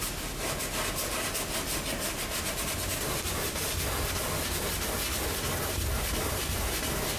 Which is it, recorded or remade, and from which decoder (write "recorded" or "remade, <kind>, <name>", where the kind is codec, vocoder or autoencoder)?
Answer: recorded